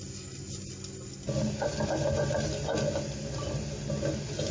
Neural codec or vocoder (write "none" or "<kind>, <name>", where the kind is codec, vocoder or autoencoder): none